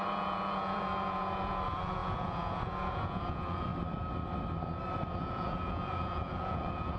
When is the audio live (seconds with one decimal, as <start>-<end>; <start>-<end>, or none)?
3.7-5.2